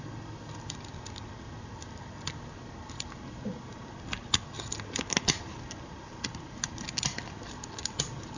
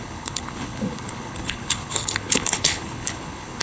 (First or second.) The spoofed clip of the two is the second